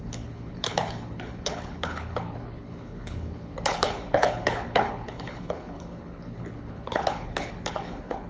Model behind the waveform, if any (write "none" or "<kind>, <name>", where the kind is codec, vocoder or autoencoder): codec, HILCodec